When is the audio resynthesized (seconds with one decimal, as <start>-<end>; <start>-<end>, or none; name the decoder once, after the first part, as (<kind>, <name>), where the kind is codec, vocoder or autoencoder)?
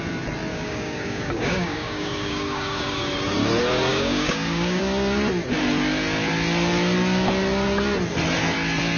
0.5-3.0 (codec, DAC); 3.9-4.8